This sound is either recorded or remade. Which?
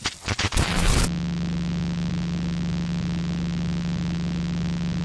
recorded